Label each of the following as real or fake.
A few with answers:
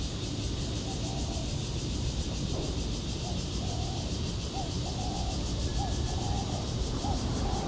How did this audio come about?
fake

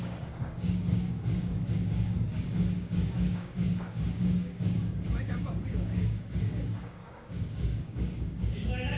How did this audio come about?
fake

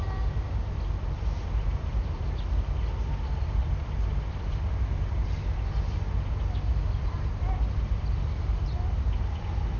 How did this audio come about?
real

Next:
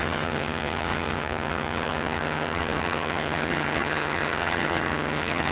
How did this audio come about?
fake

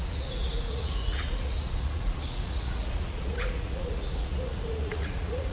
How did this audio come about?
fake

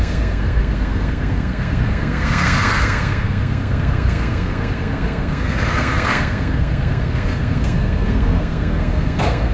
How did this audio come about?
fake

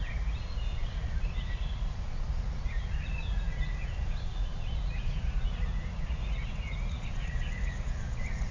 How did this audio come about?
fake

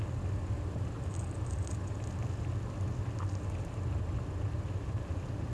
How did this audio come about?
real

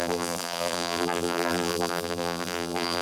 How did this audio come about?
fake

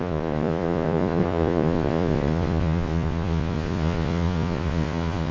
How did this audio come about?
fake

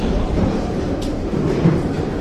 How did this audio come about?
fake